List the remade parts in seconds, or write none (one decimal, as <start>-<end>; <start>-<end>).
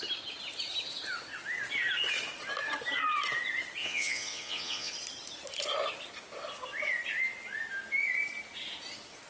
3.8-4.9